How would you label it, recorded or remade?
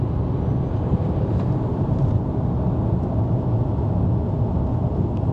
recorded